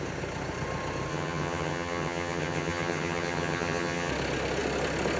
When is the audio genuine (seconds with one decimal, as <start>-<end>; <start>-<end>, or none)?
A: 0.0-1.1; 4.1-5.2

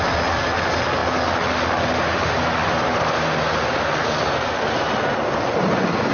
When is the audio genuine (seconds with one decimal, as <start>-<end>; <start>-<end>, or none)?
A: 0.0-6.1

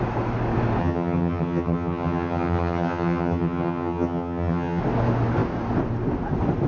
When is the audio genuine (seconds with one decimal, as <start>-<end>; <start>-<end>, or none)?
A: 0.0-0.8; 4.8-6.7